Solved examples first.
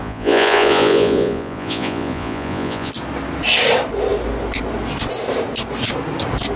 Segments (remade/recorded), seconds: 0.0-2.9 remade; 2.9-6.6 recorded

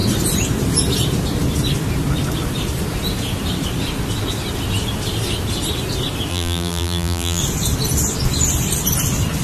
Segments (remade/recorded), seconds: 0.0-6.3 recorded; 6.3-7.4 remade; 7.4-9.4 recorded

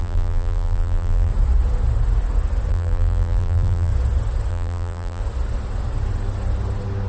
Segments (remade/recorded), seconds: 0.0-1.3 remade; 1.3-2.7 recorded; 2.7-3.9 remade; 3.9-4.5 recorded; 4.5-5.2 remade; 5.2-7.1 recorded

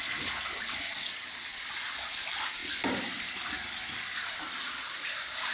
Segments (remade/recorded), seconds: 0.0-5.5 recorded

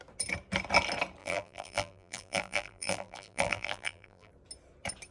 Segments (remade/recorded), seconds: 0.0-1.2 recorded; 1.2-4.3 remade; 4.3-5.1 recorded